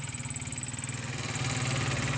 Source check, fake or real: real